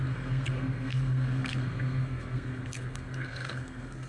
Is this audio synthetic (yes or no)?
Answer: yes